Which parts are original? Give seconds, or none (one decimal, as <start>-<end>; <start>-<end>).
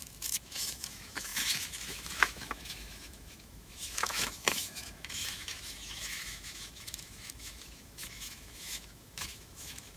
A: none